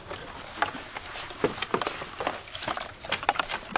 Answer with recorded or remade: recorded